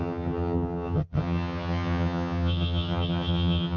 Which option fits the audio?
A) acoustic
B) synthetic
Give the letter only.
B